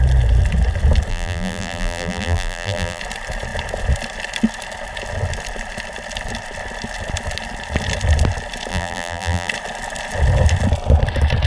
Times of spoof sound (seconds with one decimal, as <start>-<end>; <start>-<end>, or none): 1.1-3.0; 8.7-9.5